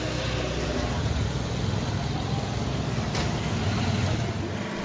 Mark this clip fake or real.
real